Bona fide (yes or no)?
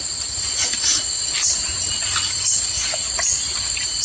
yes